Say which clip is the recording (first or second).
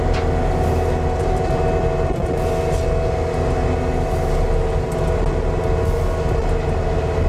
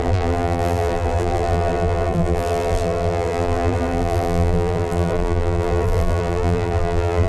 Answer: first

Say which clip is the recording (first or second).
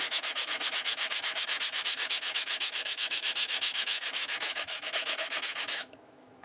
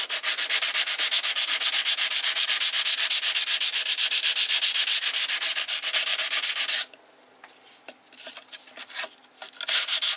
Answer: second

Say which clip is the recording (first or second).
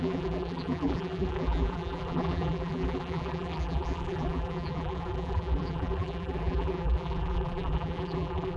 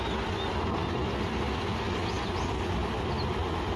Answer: second